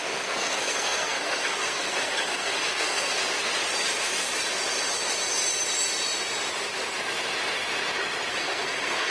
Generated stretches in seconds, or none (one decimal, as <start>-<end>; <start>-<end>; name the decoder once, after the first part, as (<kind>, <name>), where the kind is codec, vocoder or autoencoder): 0.0-3.2 (codec, SNAC); 8.3-9.1